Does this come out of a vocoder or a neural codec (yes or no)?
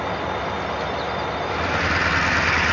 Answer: no